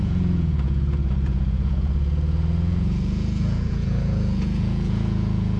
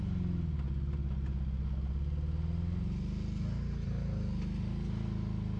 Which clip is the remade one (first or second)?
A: first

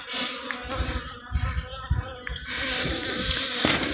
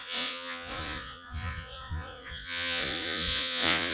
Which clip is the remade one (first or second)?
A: second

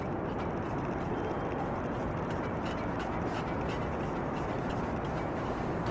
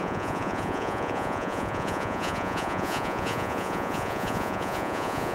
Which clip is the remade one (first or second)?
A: second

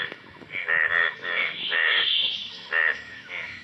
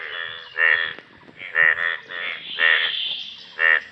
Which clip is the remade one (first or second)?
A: first